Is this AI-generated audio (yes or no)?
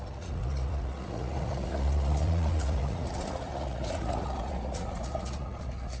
yes